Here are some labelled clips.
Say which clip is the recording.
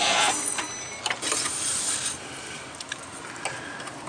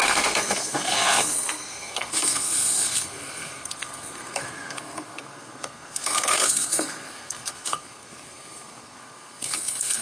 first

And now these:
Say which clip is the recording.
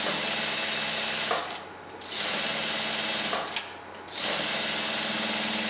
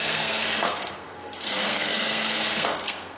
first